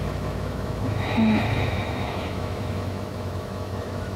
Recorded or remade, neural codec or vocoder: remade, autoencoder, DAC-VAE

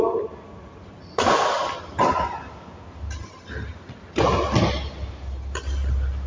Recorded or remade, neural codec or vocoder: recorded